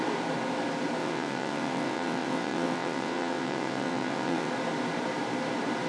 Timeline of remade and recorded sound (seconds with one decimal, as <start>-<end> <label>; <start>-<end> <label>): 0.0-1.0 recorded; 1.0-4.5 remade; 4.5-5.9 recorded